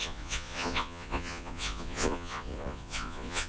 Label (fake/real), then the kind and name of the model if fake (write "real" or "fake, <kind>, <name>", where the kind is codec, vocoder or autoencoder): fake, vocoder, Vocos